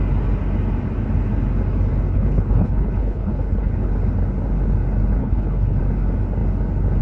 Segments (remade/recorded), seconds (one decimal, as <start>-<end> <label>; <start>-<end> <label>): 0.0-2.1 recorded; 2.1-3.9 remade; 3.9-5.2 recorded; 5.2-5.8 remade; 5.8-7.0 recorded